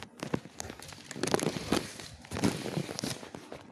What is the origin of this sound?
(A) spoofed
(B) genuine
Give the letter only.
B